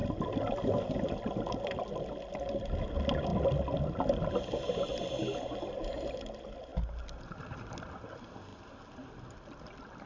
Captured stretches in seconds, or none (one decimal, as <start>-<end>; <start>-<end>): 0.0-10.1